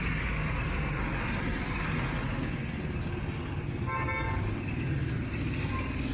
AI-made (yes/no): no